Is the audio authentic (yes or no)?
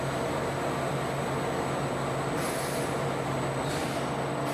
yes